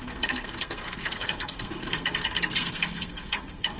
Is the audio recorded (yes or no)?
no